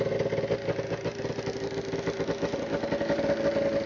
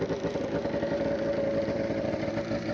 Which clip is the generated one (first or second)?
second